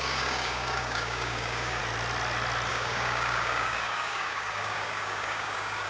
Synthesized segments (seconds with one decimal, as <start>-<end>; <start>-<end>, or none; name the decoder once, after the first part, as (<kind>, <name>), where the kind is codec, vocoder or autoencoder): 0.0-1.8 (codec, DAC); 2.7-5.9